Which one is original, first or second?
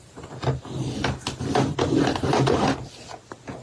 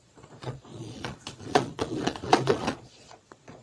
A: first